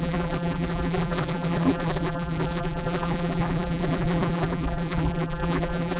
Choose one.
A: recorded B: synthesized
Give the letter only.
B